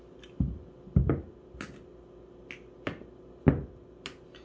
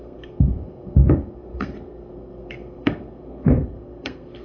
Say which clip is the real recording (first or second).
first